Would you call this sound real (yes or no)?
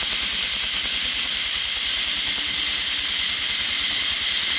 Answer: yes